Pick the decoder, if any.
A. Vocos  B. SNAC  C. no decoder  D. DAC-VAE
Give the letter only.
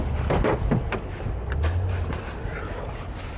C